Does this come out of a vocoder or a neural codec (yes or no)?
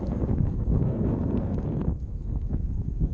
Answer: yes